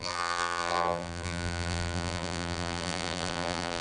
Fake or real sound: fake